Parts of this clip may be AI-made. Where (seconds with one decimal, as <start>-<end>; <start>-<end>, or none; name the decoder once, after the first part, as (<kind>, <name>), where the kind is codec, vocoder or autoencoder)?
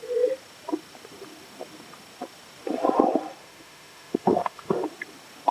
3.4-4.9 (autoencoder, DAC-VAE)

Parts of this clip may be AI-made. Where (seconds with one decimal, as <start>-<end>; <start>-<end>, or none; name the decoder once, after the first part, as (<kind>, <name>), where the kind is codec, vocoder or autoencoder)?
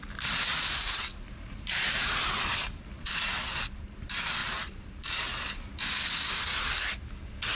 1.1-3.8 (vocoder, BigVGAN v2); 4.4-5.2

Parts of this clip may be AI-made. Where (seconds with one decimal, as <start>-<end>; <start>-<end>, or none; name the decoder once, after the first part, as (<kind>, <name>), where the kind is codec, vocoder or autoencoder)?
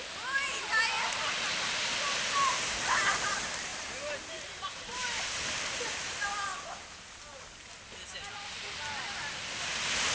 3.7-6.3 (vocoder, BigVGAN v2)